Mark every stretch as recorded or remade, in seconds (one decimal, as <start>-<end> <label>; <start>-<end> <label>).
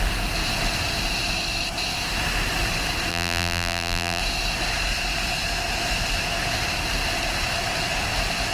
0.0-3.1 recorded; 3.1-4.2 remade; 4.2-8.5 recorded